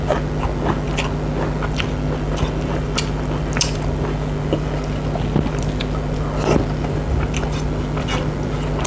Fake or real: real